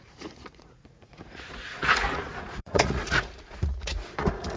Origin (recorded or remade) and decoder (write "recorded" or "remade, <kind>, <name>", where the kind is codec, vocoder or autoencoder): remade, vocoder, Vocos